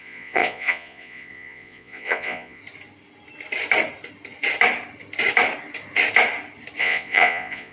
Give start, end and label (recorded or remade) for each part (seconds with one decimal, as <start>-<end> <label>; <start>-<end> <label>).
0.0-2.6 remade; 2.6-6.8 recorded; 6.8-7.7 remade